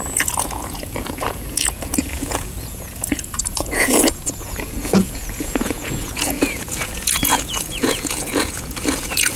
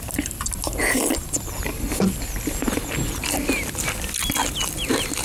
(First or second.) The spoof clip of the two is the first